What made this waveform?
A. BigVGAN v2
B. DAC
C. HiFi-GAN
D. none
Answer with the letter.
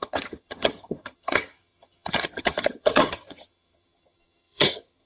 C